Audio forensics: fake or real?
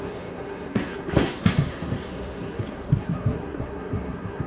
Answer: fake